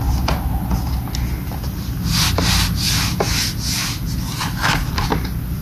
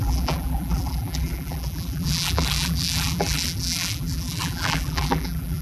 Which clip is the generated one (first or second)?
second